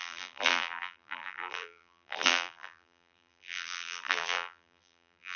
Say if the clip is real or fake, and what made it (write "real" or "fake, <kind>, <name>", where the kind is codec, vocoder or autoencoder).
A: fake, vocoder, BigVGAN v2